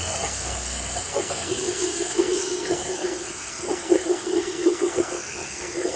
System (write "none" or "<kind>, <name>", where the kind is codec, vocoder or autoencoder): codec, SNAC